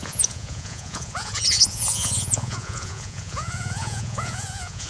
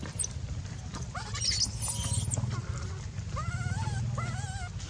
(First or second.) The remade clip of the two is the first